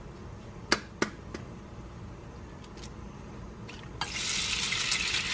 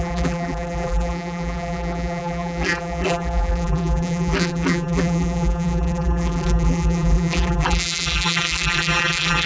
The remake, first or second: second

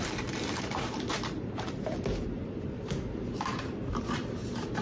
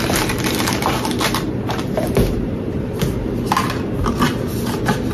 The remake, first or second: first